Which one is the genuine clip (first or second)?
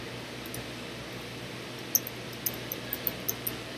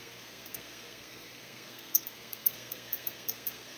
first